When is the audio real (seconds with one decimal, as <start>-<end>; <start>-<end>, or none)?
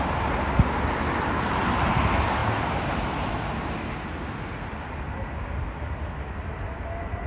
0.0-7.3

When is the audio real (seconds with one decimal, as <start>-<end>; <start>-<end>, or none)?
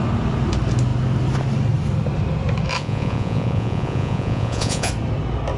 0.0-2.8; 4.9-5.6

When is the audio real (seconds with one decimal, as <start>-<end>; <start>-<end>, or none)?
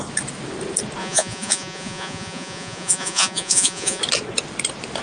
0.0-1.0; 4.0-5.0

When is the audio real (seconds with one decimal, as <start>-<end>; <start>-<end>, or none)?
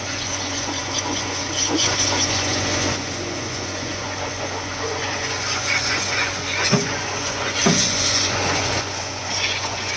none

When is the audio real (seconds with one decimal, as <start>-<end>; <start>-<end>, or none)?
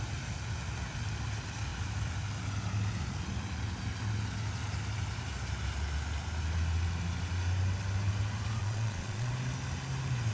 0.0-8.6; 9.3-10.3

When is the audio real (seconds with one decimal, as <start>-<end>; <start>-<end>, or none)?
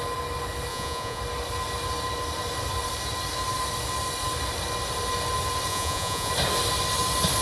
0.0-0.7; 1.2-5.7; 6.3-7.4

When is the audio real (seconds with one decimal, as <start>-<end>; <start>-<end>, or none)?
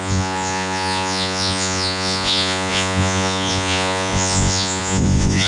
none